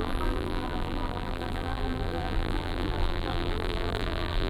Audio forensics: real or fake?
fake